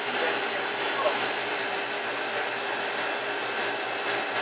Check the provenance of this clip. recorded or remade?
remade